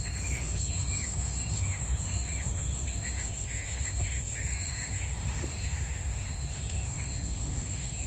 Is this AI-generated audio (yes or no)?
yes